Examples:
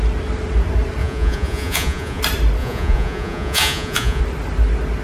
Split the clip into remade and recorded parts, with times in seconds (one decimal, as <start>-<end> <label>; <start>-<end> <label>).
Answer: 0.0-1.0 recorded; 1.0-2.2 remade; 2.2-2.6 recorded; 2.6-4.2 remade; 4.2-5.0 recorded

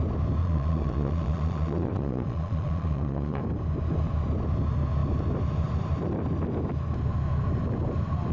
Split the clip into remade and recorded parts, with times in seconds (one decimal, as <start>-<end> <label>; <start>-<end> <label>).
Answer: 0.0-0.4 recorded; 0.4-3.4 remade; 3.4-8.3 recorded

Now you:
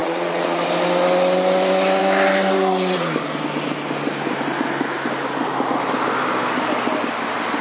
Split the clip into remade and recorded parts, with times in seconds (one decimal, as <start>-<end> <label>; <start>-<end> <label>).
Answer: 0.0-0.6 remade; 0.6-7.6 recorded

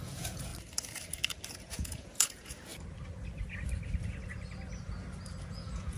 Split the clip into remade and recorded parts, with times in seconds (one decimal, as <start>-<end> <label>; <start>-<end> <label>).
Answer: 0.0-0.5 remade; 0.5-1.6 recorded; 1.6-2.7 remade; 2.7-5.4 recorded; 5.4-6.0 remade

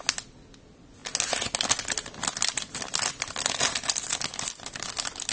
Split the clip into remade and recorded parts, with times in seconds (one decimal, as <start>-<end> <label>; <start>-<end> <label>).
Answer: 0.0-5.3 recorded

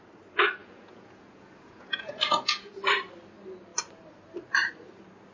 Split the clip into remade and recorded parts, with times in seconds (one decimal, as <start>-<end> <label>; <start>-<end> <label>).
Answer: 0.0-0.6 recorded; 0.6-2.7 remade; 2.7-5.3 recorded

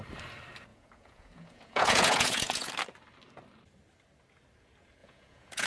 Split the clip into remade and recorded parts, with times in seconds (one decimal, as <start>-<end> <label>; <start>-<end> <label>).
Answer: 0.0-0.7 recorded; 0.7-2.7 remade; 2.7-5.0 recorded; 5.0-5.7 remade

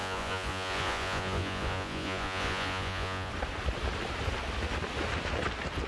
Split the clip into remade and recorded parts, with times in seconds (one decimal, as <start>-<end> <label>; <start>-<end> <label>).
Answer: 0.0-3.3 remade; 3.3-5.9 recorded